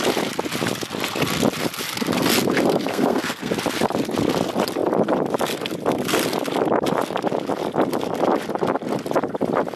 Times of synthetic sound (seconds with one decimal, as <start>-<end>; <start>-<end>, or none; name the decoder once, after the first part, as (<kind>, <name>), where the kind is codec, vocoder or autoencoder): 2.9-3.5 (codec, SNAC)